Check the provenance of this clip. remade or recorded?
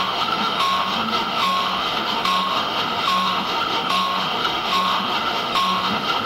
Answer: remade